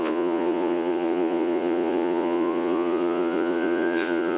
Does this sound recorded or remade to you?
remade